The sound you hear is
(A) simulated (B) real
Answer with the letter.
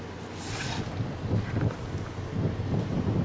B